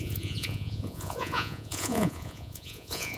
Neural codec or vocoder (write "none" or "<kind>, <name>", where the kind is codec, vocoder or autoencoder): vocoder, Vocos